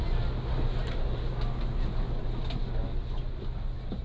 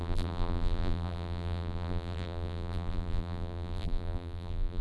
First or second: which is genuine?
first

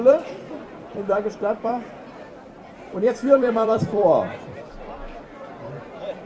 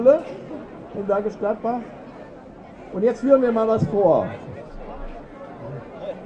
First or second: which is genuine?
second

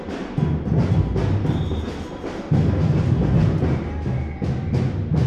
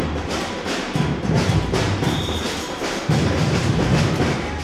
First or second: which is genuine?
first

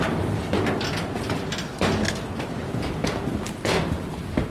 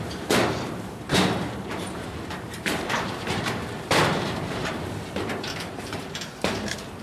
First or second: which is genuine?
first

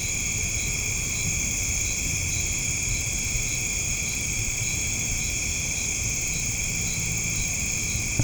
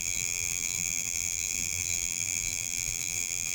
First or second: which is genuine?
first